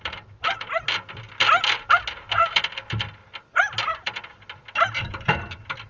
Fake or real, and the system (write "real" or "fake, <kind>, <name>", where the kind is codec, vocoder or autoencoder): real